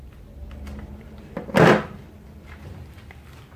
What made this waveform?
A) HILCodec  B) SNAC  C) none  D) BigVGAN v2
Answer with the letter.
D